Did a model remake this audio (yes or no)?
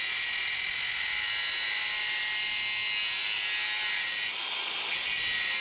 no